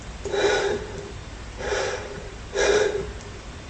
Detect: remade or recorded remade